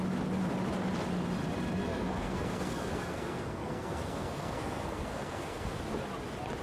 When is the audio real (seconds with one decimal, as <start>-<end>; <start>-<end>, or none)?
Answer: 0.0-1.9; 5.7-6.6